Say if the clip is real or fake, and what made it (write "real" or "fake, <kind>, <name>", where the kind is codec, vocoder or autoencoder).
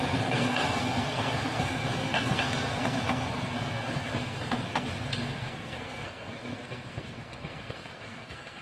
fake, codec, SNAC